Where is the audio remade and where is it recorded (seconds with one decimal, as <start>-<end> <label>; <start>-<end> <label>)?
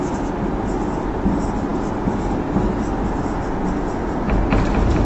0.0-5.0 recorded